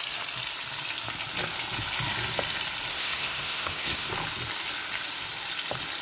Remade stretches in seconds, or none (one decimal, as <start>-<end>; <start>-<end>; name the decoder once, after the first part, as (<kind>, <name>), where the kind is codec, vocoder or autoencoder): 2.9-4.1 (codec, SNAC)